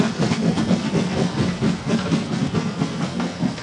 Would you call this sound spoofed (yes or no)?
yes